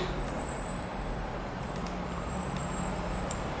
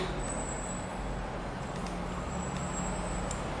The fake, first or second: first